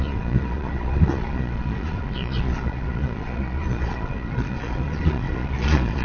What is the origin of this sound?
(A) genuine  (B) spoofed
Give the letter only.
B